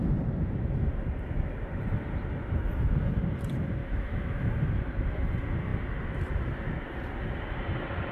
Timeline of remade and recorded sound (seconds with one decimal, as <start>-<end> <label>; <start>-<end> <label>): 0.0-3.8 recorded; 3.8-4.5 remade; 4.5-8.1 recorded